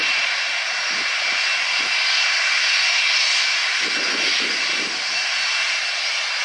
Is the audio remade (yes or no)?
no